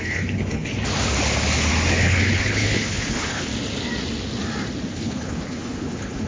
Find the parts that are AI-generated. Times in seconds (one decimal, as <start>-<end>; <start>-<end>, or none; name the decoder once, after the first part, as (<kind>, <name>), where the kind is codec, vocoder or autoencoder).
0.0-0.7 (codec, HILCodec); 1.9-3.5; 4.9-6.3